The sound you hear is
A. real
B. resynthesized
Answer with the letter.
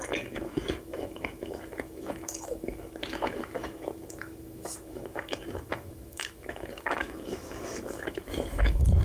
B